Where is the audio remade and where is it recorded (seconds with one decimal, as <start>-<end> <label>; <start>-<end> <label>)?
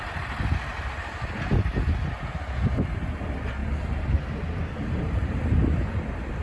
0.0-3.6 recorded; 3.6-5.4 remade; 5.4-6.4 recorded